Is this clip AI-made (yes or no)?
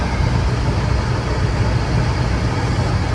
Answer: no